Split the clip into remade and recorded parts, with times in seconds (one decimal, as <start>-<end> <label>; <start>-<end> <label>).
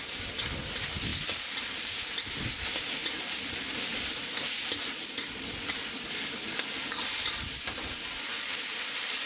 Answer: 0.0-3.0 recorded; 3.0-8.0 remade; 8.0-9.3 recorded